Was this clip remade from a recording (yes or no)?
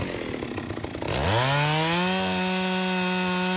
no